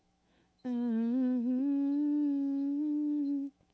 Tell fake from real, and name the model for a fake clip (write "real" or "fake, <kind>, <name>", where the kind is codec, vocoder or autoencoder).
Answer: fake, autoencoder, DAC-VAE